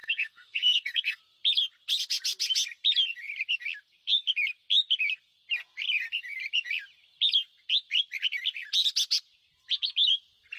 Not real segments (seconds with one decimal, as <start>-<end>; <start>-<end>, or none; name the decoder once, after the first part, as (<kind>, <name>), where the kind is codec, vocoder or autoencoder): 0.0-1.2 (codec, SNAC)